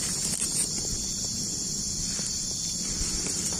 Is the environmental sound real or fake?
real